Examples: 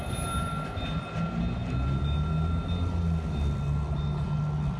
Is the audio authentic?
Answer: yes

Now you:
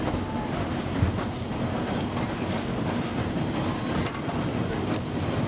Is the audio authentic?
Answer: yes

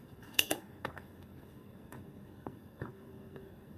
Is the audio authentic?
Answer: no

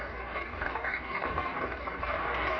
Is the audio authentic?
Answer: no